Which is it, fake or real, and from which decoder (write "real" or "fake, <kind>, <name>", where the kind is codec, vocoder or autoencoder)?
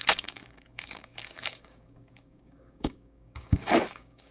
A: fake, codec, DAC